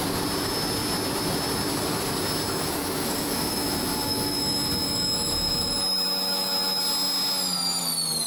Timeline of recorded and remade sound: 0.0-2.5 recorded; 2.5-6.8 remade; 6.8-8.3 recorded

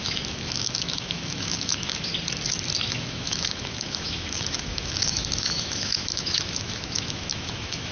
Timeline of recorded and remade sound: 0.0-2.1 remade; 2.1-2.9 recorded; 2.9-7.9 remade

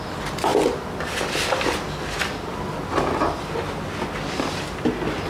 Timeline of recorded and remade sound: 0.0-5.3 recorded

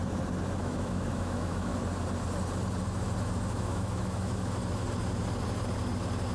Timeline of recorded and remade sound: 0.0-0.6 recorded; 0.6-1.7 remade; 1.7-3.5 recorded; 3.5-4.6 remade; 4.6-6.3 recorded

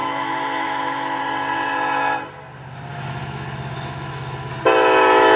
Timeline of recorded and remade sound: 0.0-1.2 remade; 1.2-2.9 recorded; 2.9-4.5 remade; 4.5-5.4 recorded

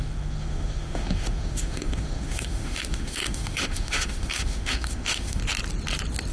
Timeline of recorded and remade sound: 0.0-5.4 remade; 5.4-6.3 recorded

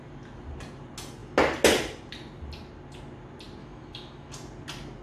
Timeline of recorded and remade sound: 0.0-3.6 recorded; 3.6-4.3 remade; 4.3-5.0 recorded

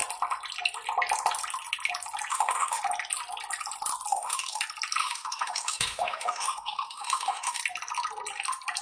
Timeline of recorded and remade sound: 0.0-2.3 recorded; 2.3-2.8 remade; 2.8-4.1 recorded; 4.1-4.6 remade; 4.6-5.0 recorded; 5.0-7.6 remade; 7.6-8.8 recorded